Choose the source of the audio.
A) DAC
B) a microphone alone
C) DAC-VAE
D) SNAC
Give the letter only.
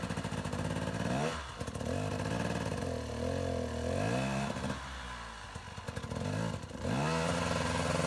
B